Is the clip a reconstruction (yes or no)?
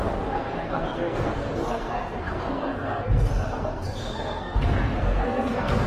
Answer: yes